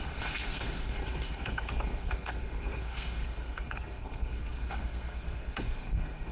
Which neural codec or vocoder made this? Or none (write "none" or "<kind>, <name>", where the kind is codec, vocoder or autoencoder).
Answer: codec, SNAC